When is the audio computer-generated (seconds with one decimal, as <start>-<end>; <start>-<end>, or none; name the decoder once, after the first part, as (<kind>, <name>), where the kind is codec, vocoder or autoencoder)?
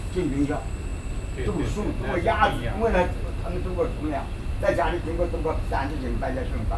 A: none